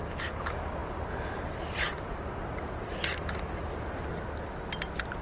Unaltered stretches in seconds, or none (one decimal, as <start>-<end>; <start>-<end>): 0.0-5.2